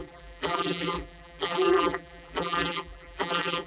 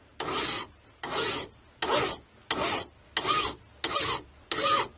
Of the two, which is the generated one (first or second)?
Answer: first